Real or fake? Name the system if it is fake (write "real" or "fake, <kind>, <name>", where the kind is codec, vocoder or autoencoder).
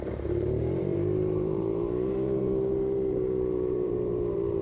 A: fake, vocoder, BigVGAN v2